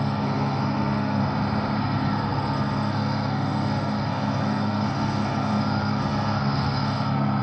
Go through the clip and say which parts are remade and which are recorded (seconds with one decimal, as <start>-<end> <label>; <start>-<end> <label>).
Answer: 0.0-1.2 remade; 1.2-1.8 recorded; 1.8-7.4 remade